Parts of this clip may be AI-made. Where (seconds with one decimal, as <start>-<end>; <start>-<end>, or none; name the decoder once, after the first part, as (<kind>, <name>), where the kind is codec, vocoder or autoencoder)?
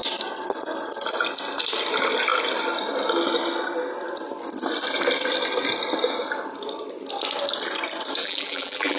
8.2-9.0 (vocoder, BigVGAN v2)